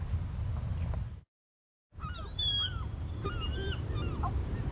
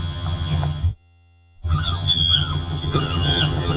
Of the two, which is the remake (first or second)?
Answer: second